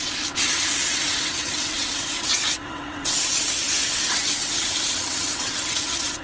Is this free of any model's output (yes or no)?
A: no